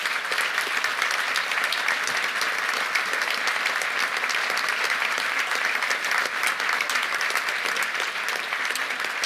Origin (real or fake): real